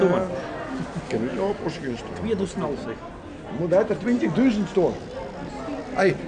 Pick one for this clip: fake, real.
real